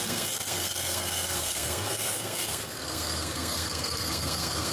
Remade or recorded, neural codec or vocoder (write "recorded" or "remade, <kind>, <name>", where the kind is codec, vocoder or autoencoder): remade, codec, SNAC